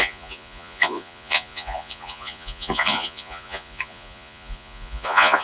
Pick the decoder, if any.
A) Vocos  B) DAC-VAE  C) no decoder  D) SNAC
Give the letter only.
A